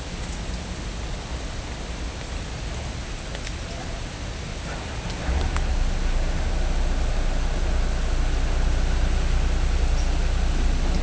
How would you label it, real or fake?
real